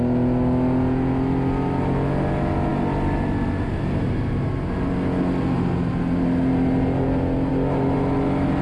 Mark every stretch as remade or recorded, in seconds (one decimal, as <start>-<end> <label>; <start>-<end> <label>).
0.0-8.6 recorded